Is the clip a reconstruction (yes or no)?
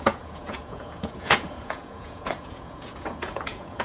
yes